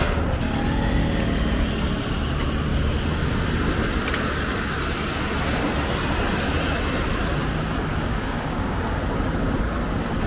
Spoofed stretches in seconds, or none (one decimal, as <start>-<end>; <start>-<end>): 7.9-8.8